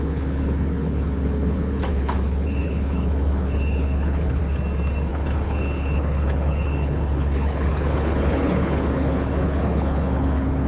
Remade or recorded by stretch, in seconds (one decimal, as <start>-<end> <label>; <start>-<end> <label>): 0.0-4.4 remade; 4.4-5.1 recorded; 5.1-10.7 remade